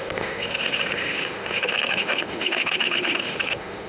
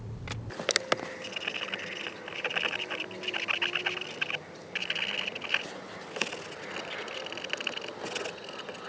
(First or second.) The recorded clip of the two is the second